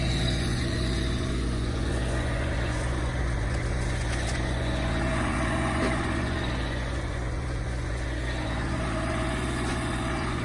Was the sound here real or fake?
fake